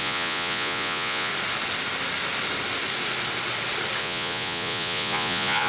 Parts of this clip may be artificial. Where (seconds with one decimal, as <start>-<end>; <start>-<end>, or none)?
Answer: 0.0-1.3; 4.0-5.7